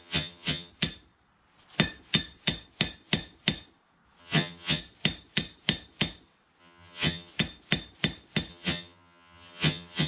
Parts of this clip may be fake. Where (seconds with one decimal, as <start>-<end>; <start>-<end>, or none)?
0.0-0.7; 4.2-4.8; 6.6-7.3; 8.5-10.1